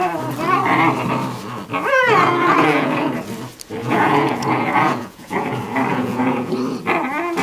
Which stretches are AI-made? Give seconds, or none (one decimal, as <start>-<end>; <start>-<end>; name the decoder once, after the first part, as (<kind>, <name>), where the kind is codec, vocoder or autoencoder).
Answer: 1.9-3.1 (vocoder, Vocos); 3.8-5.5; 5.9-6.5